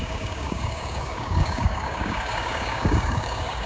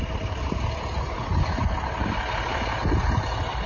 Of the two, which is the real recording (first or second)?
second